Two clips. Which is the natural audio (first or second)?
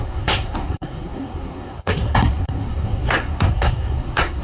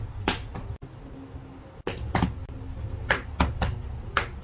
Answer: second